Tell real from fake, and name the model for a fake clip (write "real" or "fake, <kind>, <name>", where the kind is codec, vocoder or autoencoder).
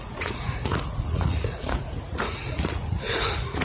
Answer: fake, vocoder, Vocos